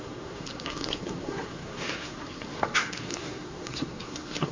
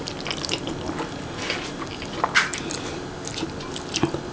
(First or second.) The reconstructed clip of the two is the first